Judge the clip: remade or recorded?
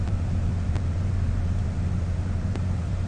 remade